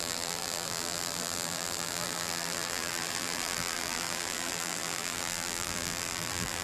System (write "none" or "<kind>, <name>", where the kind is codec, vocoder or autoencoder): vocoder, BigVGAN v2